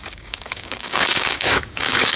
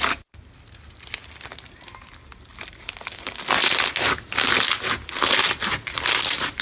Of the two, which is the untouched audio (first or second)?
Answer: second